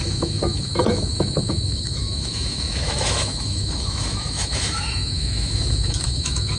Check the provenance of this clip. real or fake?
fake